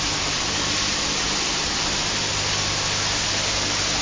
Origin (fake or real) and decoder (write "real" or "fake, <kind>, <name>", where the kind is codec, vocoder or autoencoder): real